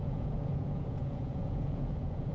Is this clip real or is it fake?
fake